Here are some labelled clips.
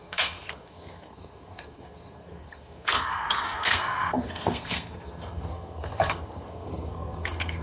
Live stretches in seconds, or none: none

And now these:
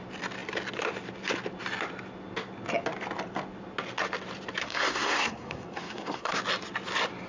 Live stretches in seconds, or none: 0.0-4.6; 6.4-7.3